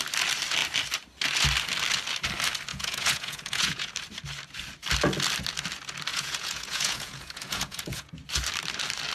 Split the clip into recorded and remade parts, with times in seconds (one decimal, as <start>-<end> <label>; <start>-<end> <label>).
0.0-2.7 recorded; 2.7-3.9 remade; 3.9-6.1 recorded; 6.1-8.1 remade; 8.1-9.1 recorded